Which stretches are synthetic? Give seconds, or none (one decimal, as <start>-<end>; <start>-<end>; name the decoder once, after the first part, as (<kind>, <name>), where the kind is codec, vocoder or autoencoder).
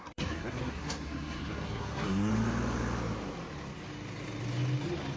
0.0-2.3 (codec, SNAC)